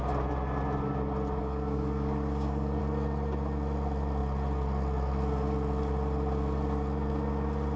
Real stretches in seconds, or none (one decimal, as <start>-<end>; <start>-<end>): 0.0-1.4; 2.8-7.8